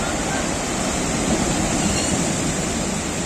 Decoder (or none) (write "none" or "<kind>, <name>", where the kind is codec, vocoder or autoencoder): vocoder, BigVGAN v2